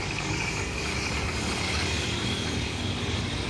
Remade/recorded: remade